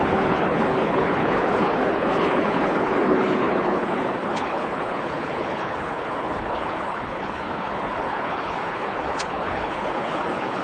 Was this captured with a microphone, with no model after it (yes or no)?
no